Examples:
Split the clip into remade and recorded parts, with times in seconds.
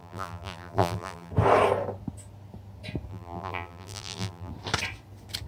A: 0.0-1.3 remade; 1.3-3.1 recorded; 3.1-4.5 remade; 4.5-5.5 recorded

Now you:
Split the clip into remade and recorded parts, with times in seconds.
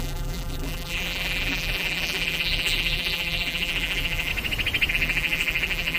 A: 0.0-4.3 remade; 4.3-4.9 recorded; 4.9-6.0 remade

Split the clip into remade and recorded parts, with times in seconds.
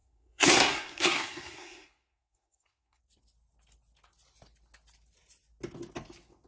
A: 0.0-3.0 remade; 3.0-6.5 recorded